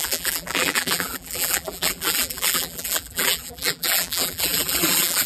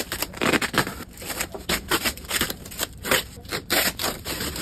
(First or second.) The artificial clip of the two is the first